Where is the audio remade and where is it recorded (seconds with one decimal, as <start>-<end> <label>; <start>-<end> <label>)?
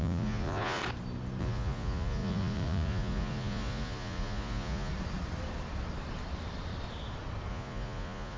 0.0-0.8 remade; 0.8-1.4 recorded; 1.4-4.9 remade; 4.9-7.5 recorded; 7.5-8.4 remade